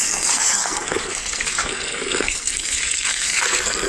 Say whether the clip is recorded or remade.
remade